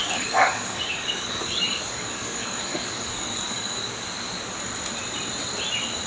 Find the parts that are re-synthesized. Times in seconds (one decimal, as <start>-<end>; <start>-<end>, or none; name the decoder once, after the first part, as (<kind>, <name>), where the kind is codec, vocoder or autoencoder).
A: 0.0-3.7 (codec, DAC)